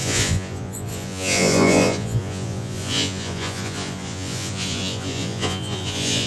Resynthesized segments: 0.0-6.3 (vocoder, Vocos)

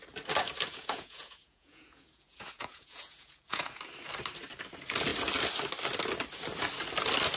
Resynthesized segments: 0.7-3.8 (vocoder, Vocos)